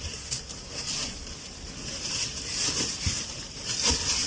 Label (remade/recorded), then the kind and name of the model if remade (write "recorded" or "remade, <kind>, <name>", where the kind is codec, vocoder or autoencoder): recorded